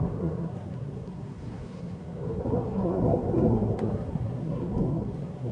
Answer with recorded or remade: remade